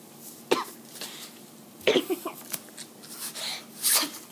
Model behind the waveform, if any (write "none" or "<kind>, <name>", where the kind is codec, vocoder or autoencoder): none